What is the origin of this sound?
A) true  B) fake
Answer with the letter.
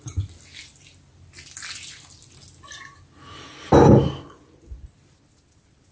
A